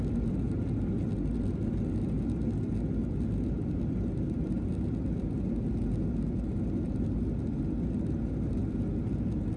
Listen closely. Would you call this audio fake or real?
real